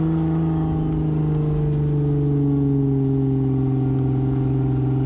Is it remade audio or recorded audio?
recorded